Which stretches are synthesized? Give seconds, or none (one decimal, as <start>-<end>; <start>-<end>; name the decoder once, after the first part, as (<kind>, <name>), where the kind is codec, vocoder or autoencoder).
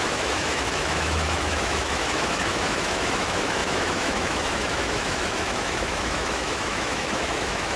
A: 0.0-7.8 (autoencoder, DAC-VAE)